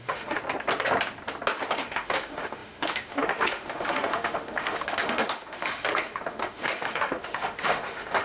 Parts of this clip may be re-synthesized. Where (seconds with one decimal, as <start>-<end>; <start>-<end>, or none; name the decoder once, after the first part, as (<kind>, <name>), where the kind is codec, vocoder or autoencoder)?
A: 0.0-0.4 (autoencoder, DAC-VAE); 1.7-8.2